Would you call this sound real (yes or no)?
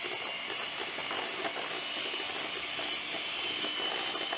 yes